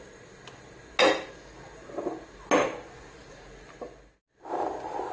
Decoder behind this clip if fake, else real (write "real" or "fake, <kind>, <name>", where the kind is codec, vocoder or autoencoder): real